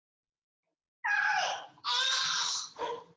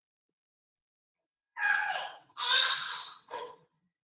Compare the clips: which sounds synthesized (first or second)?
second